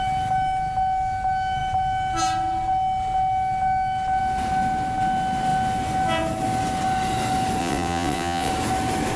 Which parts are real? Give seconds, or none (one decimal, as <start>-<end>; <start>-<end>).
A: 0.0-7.6; 8.5-9.2